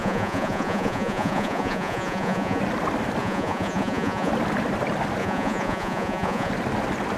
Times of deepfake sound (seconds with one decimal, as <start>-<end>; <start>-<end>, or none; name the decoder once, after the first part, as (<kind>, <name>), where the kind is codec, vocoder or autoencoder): 0.0-2.6 (vocoder, Vocos); 3.2-4.3; 5.2-6.5